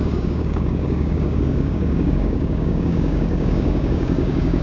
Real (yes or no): no